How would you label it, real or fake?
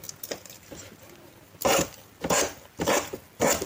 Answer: real